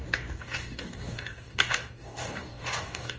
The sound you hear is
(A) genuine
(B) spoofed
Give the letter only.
B